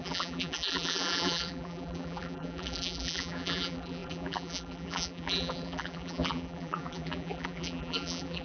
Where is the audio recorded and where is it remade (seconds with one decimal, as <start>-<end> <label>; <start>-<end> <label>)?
0.0-8.4 remade